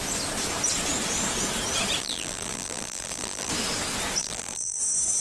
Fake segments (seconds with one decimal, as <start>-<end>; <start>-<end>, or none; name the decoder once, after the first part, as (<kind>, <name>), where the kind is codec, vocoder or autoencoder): 2.0-3.5 (vocoder, BigVGAN v2); 4.2-4.8